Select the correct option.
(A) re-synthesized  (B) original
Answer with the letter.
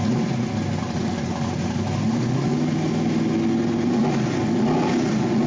B